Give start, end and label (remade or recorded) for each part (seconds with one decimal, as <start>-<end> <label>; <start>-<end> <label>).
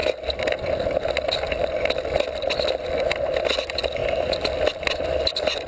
0.0-5.7 recorded